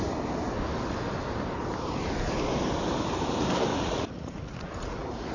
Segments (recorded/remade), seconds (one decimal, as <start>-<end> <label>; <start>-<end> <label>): 0.0-3.7 recorded; 3.7-5.3 remade